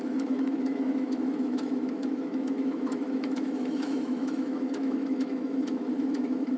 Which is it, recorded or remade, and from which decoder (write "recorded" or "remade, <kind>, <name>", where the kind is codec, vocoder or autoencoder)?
remade, autoencoder, DAC-VAE